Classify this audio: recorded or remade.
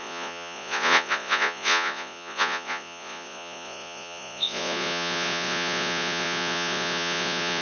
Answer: remade